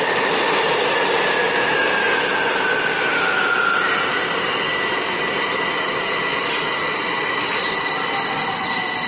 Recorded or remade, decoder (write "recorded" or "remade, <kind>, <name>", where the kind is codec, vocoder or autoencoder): recorded